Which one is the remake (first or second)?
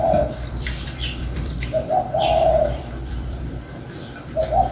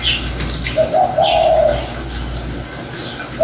first